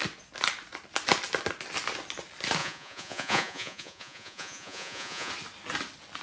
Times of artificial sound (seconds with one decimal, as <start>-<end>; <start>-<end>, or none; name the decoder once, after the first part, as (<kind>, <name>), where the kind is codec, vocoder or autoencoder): 2.6-5.3 (vocoder, Vocos)